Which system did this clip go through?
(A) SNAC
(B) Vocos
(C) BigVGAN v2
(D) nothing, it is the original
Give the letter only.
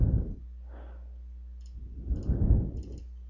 D